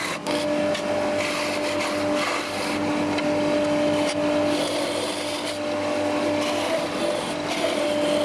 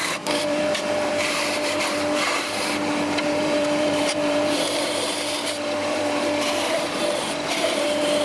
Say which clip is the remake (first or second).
second